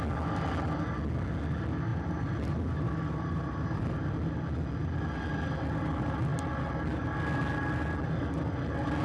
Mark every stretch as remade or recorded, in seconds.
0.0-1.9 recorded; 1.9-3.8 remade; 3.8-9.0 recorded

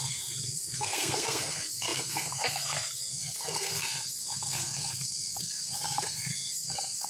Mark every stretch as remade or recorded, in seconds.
0.0-7.1 remade